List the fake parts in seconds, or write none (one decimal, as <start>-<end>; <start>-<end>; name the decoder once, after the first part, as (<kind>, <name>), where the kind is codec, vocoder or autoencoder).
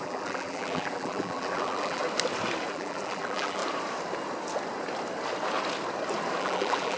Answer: 0.0-2.0 (vocoder, BigVGAN v2); 2.7-3.6; 6.4-7.0